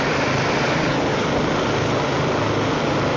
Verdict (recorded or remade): recorded